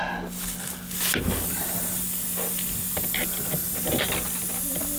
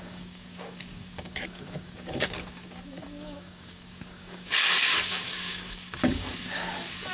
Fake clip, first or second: second